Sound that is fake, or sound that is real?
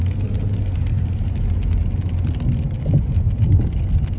real